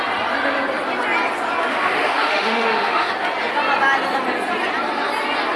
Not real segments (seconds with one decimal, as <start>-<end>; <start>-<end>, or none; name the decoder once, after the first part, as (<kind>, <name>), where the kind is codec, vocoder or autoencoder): 1.7-3.1 (autoencoder, DAC-VAE)